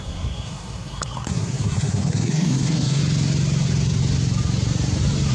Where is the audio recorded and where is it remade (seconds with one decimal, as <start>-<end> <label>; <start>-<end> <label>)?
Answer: 0.0-3.0 remade; 3.0-5.3 recorded